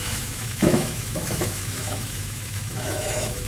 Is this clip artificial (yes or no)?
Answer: yes